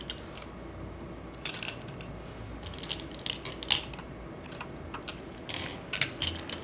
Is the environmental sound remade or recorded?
recorded